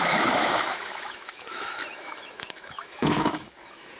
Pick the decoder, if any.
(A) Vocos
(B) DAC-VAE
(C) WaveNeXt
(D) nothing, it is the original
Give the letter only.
B